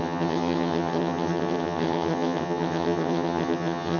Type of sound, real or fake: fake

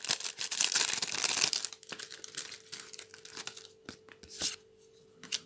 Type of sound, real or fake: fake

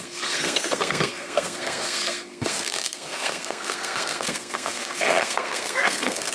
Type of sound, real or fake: fake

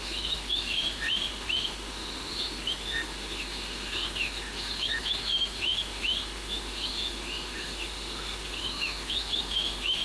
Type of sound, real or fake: fake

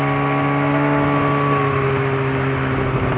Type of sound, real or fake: real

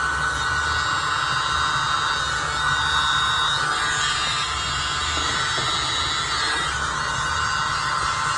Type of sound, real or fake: real